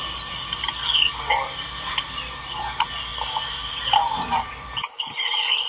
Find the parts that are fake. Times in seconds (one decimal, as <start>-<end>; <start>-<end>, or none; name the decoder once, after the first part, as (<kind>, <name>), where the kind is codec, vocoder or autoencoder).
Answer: none